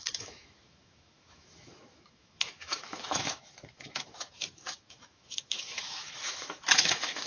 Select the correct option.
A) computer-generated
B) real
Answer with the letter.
A